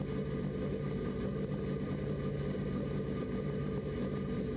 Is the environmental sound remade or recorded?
recorded